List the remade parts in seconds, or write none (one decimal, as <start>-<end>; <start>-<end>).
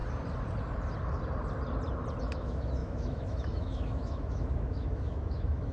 2.2-5.7